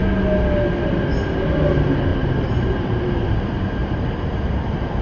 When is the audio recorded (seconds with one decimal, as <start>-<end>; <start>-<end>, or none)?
0.0-2.1; 3.4-3.8